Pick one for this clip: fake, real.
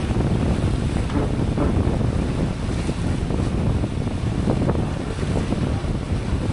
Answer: real